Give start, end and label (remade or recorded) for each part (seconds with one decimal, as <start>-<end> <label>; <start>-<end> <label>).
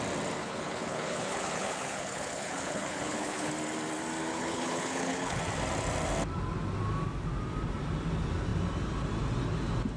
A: 0.0-0.4 recorded; 0.4-3.5 remade; 3.5-4.3 recorded; 4.3-5.4 remade; 5.4-10.0 recorded